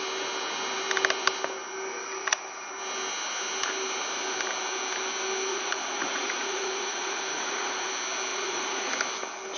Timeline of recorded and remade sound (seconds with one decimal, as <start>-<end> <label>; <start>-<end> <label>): 0.0-5.5 recorded; 5.5-7.9 remade; 7.9-8.3 recorded; 8.3-8.9 remade; 8.9-9.6 recorded

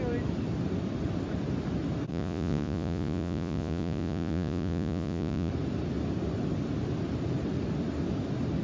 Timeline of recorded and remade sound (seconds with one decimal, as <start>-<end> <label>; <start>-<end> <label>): 0.0-2.1 recorded; 2.1-5.5 remade; 5.5-8.6 recorded

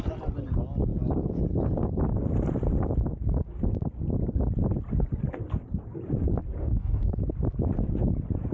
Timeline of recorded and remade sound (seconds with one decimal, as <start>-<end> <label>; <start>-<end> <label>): 0.0-6.6 recorded; 6.6-7.2 remade; 7.2-8.5 recorded

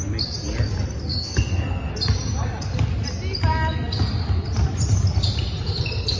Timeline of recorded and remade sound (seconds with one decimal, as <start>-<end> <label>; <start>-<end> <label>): 0.0-1.1 recorded; 1.1-1.9 remade; 1.9-6.2 recorded

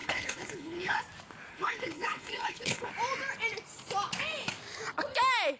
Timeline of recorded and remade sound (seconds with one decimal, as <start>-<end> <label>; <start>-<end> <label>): 0.0-1.0 remade; 1.0-1.5 recorded; 1.5-2.9 remade; 2.9-5.6 recorded

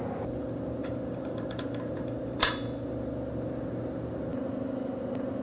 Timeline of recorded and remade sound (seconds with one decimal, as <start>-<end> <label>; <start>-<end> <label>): 0.0-0.8 recorded; 0.8-2.5 remade; 2.5-5.4 recorded

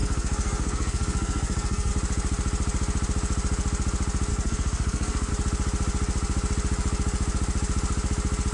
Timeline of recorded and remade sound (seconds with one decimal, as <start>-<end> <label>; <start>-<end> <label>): 0.0-1.9 remade; 1.9-4.3 recorded; 4.3-5.3 remade; 5.3-8.5 recorded

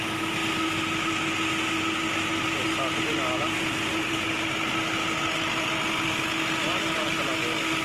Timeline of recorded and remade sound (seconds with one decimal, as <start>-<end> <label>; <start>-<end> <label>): 0.0-7.8 recorded